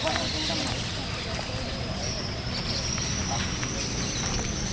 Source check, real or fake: real